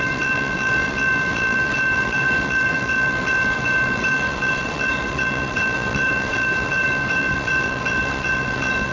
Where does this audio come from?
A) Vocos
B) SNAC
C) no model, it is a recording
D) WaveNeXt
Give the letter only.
D